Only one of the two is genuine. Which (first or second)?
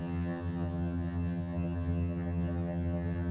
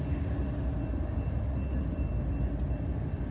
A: second